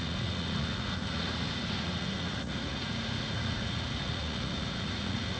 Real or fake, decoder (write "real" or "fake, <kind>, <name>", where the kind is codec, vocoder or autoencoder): fake, vocoder, Vocos